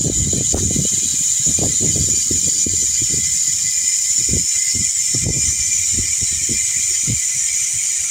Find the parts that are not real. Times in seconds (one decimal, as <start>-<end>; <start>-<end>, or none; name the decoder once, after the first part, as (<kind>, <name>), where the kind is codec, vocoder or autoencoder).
none